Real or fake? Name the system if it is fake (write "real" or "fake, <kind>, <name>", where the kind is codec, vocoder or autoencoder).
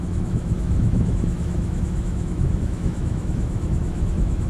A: fake, autoencoder, DAC-VAE